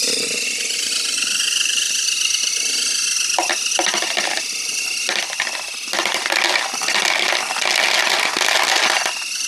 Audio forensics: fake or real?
real